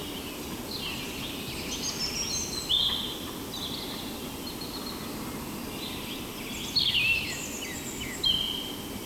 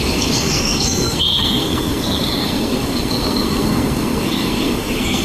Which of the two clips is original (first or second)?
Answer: first